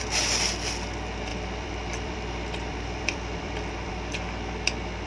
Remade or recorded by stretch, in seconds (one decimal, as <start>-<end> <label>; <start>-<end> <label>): 0.0-1.3 recorded; 1.3-3.9 remade; 3.9-5.1 recorded

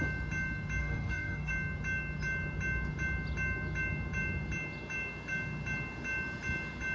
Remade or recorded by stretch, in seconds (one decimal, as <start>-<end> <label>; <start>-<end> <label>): 0.0-0.8 recorded; 0.8-1.5 remade; 1.5-6.9 recorded